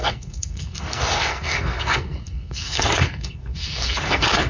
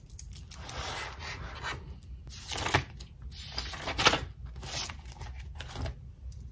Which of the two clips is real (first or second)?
second